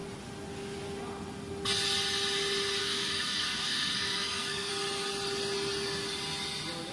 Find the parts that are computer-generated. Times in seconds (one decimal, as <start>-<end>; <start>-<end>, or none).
2.8-4.7